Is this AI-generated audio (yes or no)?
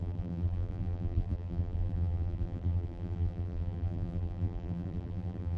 yes